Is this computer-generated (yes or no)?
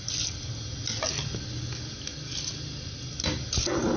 no